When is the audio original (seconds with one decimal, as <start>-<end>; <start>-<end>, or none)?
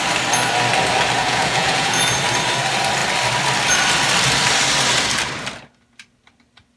0.0-1.2; 2.0-6.8